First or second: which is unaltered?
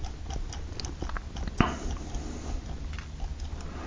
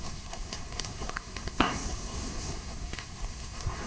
first